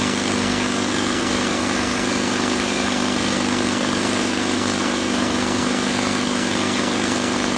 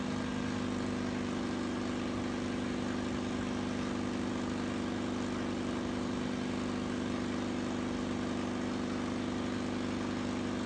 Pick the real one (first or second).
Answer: second